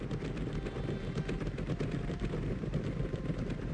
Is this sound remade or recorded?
recorded